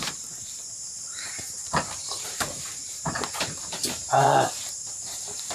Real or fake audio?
fake